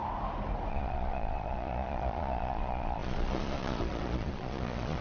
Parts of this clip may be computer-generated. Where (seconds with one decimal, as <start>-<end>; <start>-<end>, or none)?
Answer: 0.7-5.0